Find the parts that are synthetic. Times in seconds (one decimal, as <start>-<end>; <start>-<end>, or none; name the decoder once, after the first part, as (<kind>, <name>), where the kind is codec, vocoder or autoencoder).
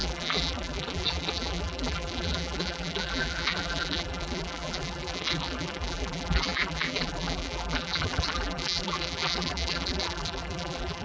0.0-11.0 (vocoder, BigVGAN v2)